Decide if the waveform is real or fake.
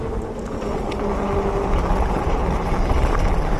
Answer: real